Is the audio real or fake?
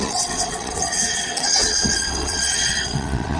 fake